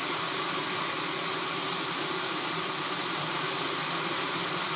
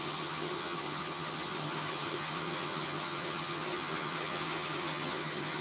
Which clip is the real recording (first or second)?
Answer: first